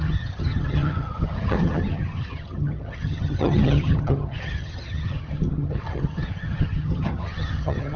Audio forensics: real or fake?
fake